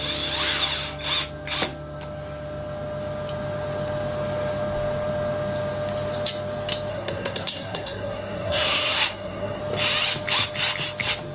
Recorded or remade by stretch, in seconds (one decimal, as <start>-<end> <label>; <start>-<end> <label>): 0.0-6.9 recorded; 6.9-9.6 remade; 9.6-11.3 recorded

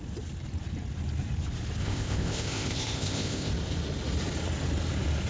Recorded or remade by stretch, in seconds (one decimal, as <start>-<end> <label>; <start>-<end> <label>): 0.0-1.8 recorded; 1.8-3.5 remade; 3.5-5.3 recorded

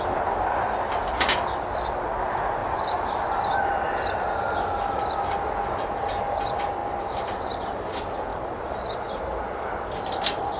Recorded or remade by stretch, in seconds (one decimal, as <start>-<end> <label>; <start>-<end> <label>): 0.0-2.6 recorded; 2.6-3.4 remade; 3.4-6.8 recorded; 6.8-7.9 remade; 7.9-8.3 recorded; 8.3-9.2 remade; 9.2-10.6 recorded